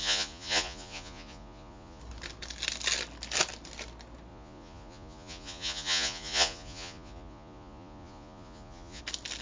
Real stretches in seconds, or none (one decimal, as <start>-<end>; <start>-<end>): 2.0-4.3; 9.0-9.4

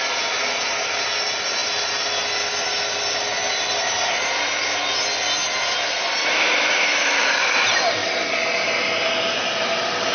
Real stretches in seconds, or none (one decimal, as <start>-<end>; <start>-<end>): 0.0-8.0; 8.5-10.1

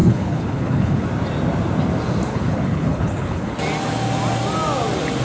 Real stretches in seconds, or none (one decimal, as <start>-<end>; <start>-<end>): 1.0-2.3; 3.5-5.2

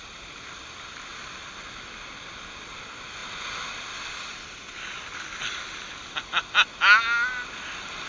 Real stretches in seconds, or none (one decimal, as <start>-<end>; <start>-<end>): 0.0-8.1

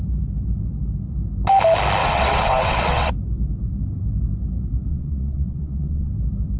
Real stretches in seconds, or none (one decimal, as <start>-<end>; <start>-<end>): 0.0-2.0; 3.1-4.9; 6.1-6.6

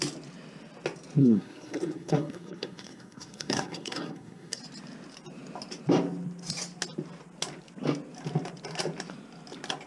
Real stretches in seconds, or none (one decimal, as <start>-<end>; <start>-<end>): 0.0-1.2; 4.6-9.9

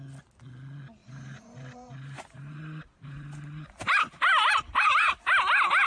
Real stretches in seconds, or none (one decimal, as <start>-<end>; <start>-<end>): 0.0-1.0; 4.5-5.9